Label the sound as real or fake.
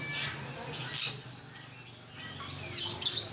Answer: real